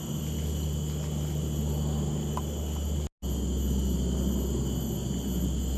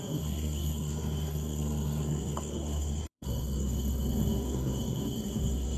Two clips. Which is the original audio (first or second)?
first